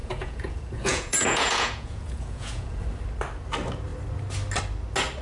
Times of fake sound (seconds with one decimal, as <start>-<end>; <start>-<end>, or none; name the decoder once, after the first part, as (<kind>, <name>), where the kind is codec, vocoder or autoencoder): 0.0-2.8 (vocoder, Vocos)